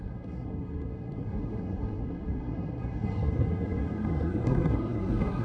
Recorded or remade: remade